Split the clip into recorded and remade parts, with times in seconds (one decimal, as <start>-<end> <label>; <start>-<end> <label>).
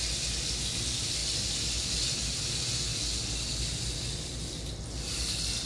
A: 0.0-5.7 recorded